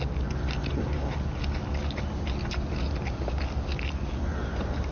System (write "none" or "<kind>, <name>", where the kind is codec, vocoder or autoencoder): none